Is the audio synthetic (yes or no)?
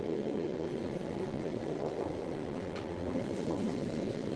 yes